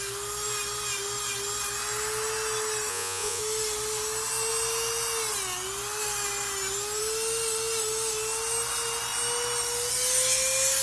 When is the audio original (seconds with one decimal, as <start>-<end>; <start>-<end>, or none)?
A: 0.0-2.9; 3.4-10.8